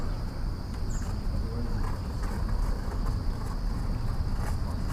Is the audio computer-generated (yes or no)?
no